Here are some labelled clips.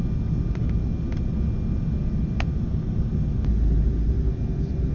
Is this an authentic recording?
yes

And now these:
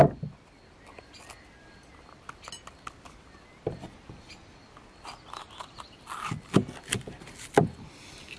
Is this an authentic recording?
yes